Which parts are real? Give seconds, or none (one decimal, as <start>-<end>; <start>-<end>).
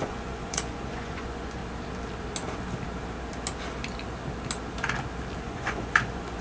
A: 1.6-5.4